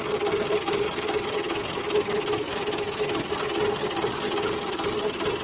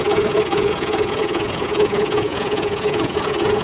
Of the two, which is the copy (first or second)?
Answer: second